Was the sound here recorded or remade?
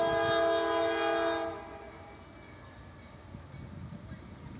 recorded